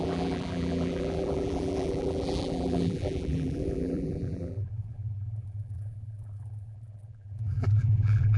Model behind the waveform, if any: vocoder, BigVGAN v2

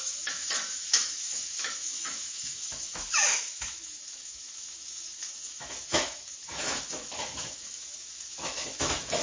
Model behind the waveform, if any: autoencoder, DAC-VAE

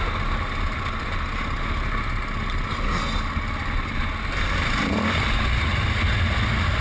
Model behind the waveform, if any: none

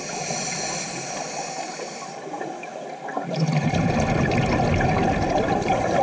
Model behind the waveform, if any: none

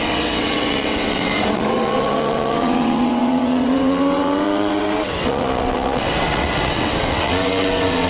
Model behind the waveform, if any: vocoder, WaveNeXt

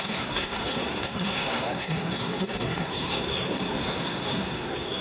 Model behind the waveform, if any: codec, SNAC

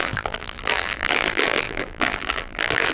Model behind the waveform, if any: vocoder, BigVGAN v2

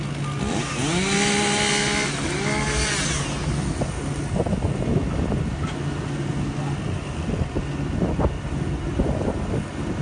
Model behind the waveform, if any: none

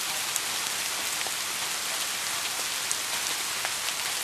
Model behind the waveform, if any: none